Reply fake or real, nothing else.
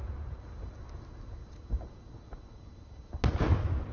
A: real